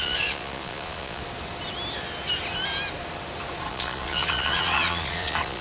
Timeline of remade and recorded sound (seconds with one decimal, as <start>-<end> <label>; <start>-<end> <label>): 0.0-1.2 remade; 1.2-3.7 recorded; 3.7-5.6 remade